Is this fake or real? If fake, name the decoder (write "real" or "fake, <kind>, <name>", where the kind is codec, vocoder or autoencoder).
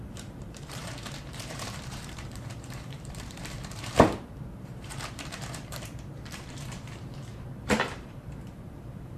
fake, vocoder, BigVGAN v2